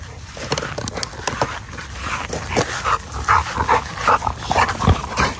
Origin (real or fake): real